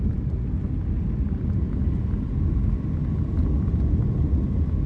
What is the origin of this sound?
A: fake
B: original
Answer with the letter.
B